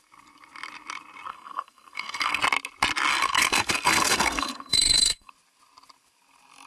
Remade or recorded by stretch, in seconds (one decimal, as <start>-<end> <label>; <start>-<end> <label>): 0.0-1.3 recorded; 1.3-2.4 remade; 2.4-3.1 recorded; 3.1-5.3 remade; 5.3-6.7 recorded